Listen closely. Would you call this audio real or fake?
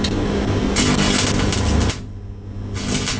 real